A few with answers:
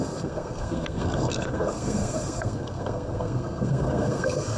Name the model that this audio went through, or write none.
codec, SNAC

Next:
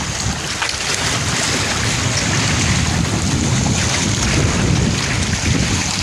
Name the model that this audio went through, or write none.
none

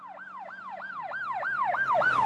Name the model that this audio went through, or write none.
none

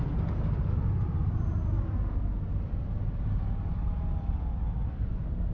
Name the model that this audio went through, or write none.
none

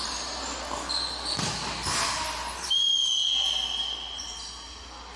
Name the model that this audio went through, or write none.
none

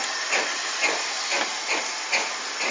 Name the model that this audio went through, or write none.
none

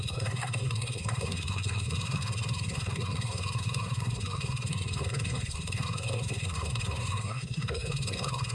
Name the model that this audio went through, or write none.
codec, SNAC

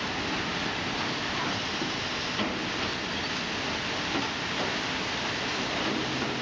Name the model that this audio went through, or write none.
none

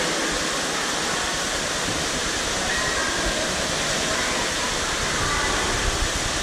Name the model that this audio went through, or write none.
none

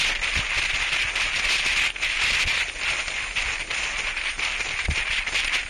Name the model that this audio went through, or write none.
none